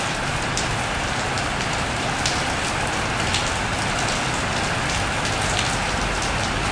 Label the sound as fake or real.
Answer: real